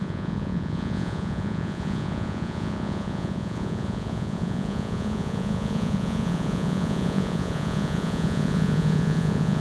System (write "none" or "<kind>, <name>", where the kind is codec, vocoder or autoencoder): vocoder, Vocos